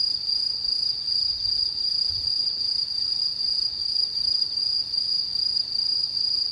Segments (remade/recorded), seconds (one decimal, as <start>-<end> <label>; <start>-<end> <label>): 0.0-3.8 recorded; 3.8-4.6 remade; 4.6-5.3 recorded; 5.3-6.1 remade; 6.1-6.5 recorded